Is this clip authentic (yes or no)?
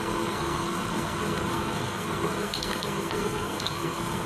no